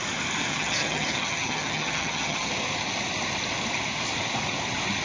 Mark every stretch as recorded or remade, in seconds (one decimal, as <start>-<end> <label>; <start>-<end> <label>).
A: 0.0-0.5 recorded; 0.5-2.5 remade; 2.5-5.0 recorded